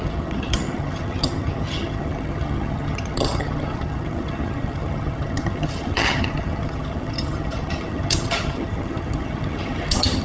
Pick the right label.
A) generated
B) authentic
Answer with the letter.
A